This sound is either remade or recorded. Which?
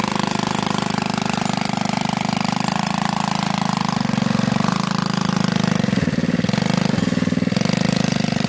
recorded